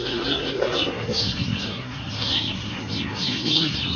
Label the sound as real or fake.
fake